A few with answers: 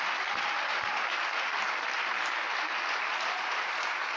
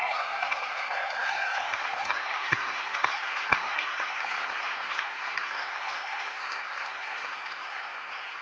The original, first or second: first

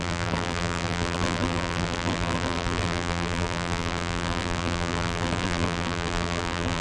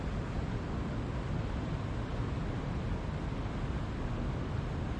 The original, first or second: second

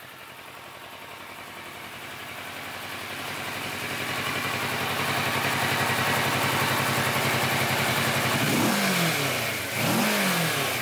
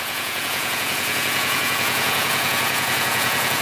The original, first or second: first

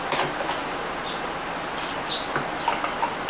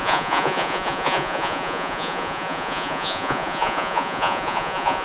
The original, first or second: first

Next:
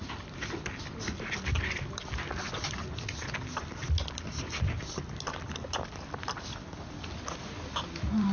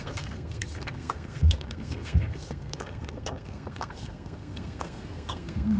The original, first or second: first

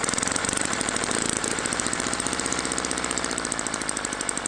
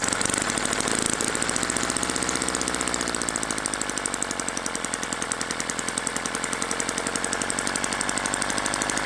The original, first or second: second